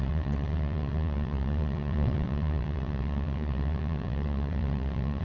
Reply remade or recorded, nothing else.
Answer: remade